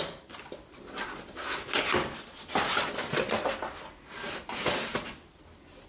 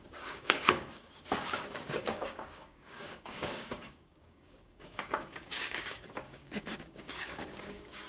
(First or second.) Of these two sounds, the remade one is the second